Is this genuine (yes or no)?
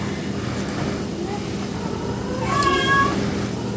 yes